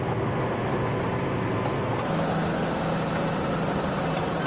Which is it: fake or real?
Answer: real